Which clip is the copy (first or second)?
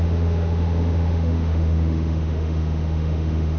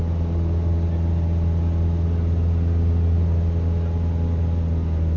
first